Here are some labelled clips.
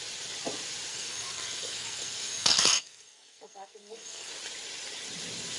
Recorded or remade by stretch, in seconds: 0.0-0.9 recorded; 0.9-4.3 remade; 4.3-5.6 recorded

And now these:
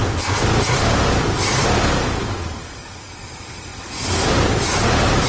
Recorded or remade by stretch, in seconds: 0.0-3.2 recorded; 3.2-3.7 remade; 3.7-5.3 recorded

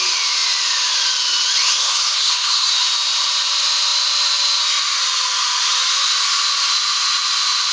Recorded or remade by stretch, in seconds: 0.0-1.7 recorded; 1.7-2.7 remade; 2.7-7.7 recorded

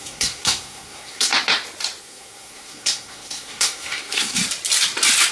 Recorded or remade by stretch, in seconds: 0.0-1.3 remade; 1.3-2.0 recorded; 2.0-4.4 remade; 4.4-5.3 recorded